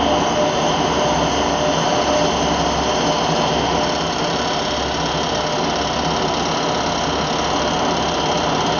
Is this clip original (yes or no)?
yes